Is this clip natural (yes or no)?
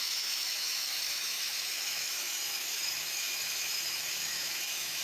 no